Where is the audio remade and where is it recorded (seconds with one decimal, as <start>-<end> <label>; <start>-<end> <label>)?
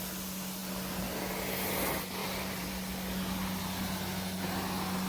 0.0-2.2 recorded; 2.2-2.7 remade; 2.7-5.1 recorded